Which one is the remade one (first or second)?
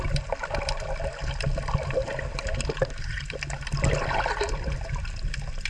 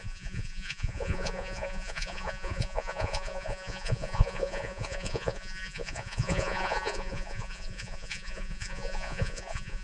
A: second